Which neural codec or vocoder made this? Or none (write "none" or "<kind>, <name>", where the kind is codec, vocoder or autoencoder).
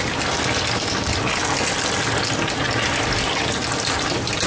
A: none